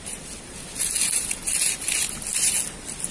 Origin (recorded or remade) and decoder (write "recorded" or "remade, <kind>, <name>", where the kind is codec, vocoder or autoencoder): recorded